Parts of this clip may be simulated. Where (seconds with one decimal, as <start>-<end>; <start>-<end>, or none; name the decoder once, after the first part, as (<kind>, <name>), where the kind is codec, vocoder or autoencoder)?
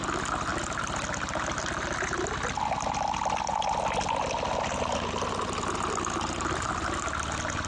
none